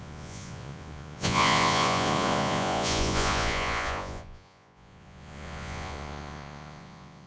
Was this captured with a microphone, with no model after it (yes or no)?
no